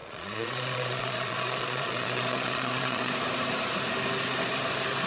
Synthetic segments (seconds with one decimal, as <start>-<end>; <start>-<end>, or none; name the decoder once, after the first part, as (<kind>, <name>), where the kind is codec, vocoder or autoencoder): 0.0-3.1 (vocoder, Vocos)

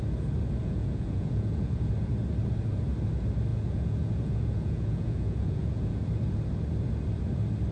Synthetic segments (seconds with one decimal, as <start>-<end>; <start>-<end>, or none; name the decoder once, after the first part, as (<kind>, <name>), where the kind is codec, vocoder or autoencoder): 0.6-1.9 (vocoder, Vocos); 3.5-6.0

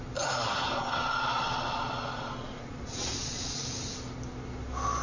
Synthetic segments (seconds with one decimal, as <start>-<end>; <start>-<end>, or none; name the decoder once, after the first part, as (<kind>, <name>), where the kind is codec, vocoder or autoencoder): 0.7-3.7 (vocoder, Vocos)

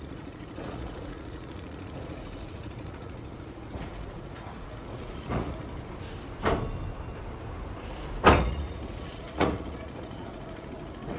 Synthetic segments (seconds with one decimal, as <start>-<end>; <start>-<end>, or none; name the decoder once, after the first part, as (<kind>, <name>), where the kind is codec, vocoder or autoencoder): 0.0-5.7 (vocoder, Vocos); 8.4-11.2

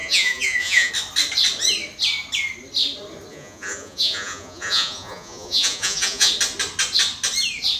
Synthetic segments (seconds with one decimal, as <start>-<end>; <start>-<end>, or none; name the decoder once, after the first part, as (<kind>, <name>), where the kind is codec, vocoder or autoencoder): 0.0-0.9 (vocoder, Vocos); 3.3-6.3

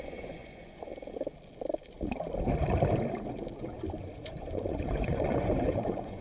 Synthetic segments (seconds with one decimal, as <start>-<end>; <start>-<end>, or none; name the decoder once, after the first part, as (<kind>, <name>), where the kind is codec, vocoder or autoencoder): 0.0-0.9 (vocoder, Vocos); 4.0-6.2

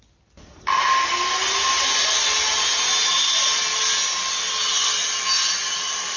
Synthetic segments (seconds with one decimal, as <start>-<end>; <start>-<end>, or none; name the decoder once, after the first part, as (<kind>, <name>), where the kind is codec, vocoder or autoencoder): none